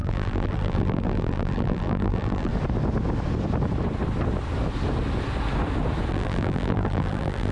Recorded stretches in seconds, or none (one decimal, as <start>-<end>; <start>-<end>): 2.5-6.1